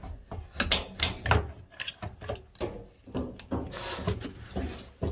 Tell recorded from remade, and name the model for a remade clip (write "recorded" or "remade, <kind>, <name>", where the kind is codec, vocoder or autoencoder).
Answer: recorded